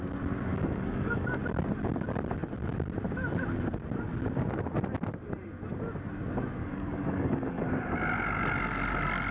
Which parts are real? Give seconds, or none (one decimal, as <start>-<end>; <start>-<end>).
0.0-0.5; 1.4-6.6; 7.7-9.3